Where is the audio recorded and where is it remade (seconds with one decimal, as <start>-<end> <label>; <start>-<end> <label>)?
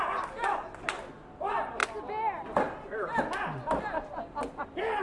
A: 0.0-5.0 recorded